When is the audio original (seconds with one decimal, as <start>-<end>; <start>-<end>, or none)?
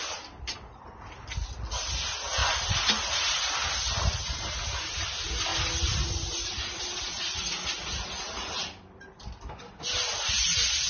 0.0-2.4; 3.5-5.5; 7.0-10.9